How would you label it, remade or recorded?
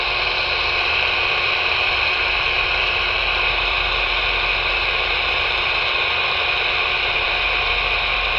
remade